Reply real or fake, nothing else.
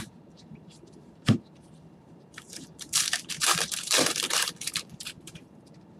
fake